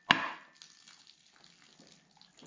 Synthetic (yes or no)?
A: no